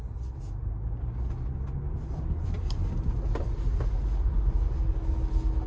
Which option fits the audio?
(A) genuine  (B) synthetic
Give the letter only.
A